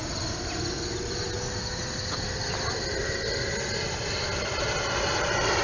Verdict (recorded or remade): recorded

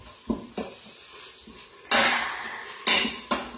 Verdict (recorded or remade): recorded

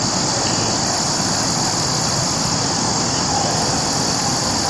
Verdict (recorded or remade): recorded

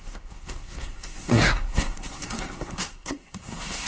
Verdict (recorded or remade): remade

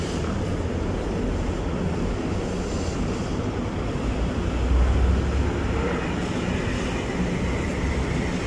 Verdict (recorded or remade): recorded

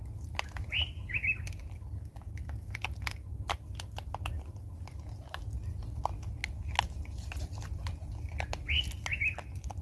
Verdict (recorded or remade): recorded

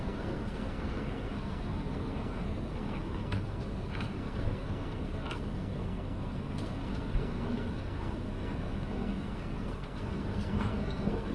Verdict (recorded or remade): remade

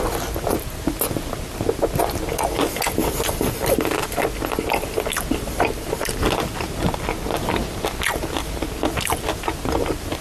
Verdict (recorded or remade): recorded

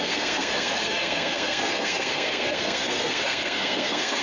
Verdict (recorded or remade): remade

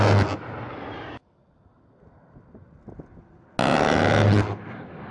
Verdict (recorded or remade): recorded